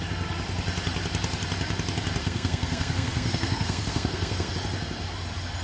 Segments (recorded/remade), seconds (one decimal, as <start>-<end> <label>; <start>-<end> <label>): 0.0-2.2 recorded; 2.2-4.5 remade; 4.5-5.6 recorded